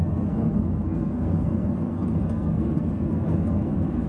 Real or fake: fake